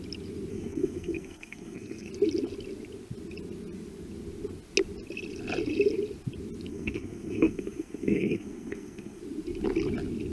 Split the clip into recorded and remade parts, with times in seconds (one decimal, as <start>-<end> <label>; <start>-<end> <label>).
0.0-0.5 recorded; 0.5-2.1 remade; 2.1-6.7 recorded; 6.7-9.2 remade; 9.2-10.3 recorded